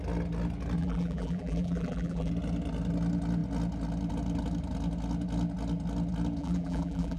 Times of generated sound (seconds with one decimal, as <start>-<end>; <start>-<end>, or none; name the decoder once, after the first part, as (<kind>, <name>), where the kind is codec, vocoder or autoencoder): 0.8-2.3 (vocoder, BigVGAN v2); 6.4-7.2

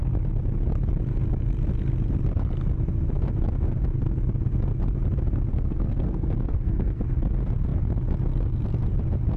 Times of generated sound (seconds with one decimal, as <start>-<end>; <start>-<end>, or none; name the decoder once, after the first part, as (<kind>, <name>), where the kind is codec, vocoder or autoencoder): 5.5-7.0 (codec, SNAC)